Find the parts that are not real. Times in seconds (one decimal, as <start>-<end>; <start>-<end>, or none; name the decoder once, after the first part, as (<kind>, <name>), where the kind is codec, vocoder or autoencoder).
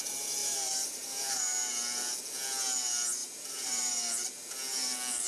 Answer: 0.4-1.7 (vocoder, BigVGAN v2); 3.2-3.8